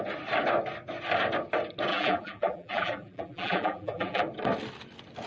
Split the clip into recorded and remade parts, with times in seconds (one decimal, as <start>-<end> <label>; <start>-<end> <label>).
0.0-1.9 recorded; 1.9-4.2 remade; 4.2-5.3 recorded